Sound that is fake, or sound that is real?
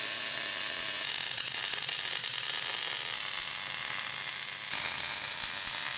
real